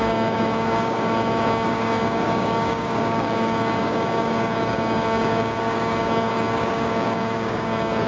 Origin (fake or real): fake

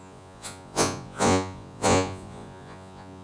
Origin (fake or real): fake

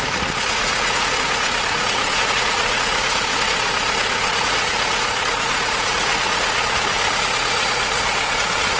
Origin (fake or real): fake